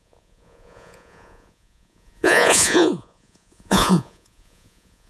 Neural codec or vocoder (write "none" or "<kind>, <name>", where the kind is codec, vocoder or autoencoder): vocoder, Vocos